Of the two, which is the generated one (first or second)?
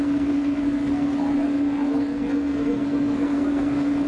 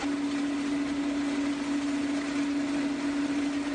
first